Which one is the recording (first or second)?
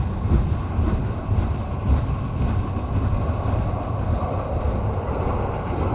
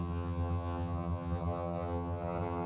first